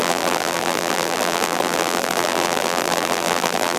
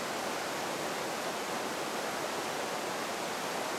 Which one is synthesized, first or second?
first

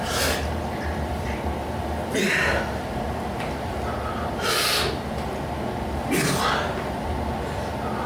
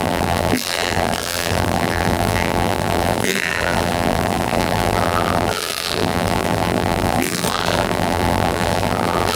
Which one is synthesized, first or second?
second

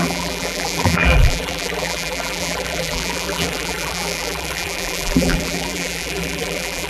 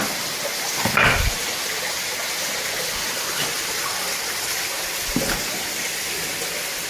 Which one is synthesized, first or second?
first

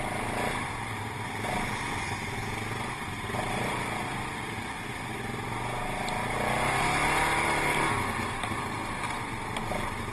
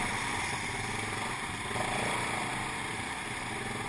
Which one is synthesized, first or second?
second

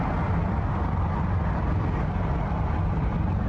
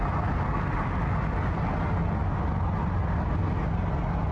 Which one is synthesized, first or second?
first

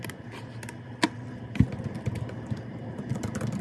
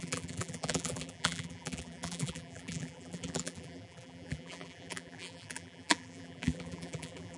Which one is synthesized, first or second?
second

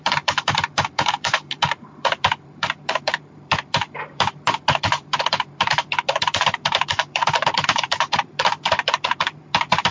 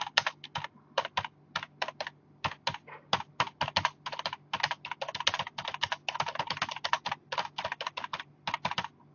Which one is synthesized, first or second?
first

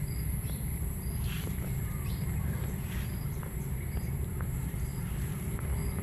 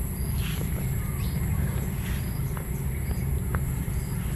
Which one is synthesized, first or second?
first